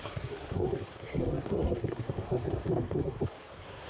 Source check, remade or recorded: remade